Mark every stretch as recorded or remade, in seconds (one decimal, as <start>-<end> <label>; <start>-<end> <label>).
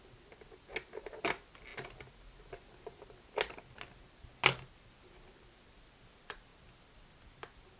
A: 0.0-7.8 recorded